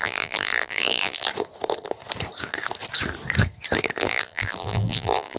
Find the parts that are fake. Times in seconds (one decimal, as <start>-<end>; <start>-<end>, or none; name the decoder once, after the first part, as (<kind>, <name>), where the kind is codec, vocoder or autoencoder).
0.0-1.3 (vocoder, BigVGAN v2); 4.0-5.4